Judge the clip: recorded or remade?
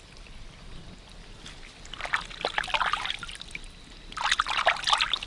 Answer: recorded